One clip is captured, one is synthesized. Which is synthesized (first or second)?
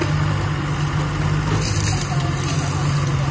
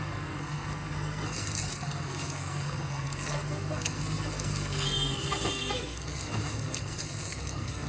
second